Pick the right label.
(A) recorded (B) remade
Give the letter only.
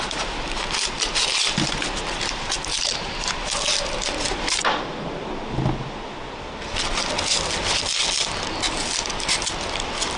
A